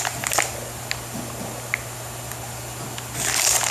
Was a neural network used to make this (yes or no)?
no